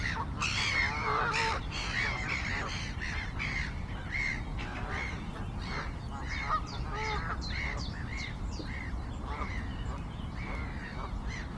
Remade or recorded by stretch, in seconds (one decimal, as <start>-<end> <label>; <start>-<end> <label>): 0.0-1.8 remade; 1.8-6.5 recorded; 6.5-9.7 remade; 9.7-11.6 recorded